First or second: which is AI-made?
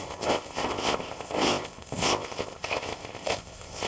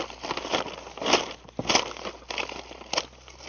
first